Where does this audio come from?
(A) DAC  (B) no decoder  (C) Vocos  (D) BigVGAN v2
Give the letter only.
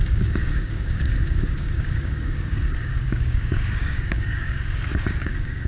A